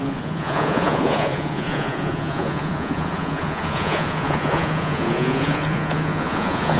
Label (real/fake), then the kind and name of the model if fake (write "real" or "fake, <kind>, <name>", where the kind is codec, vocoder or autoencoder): fake, vocoder, Vocos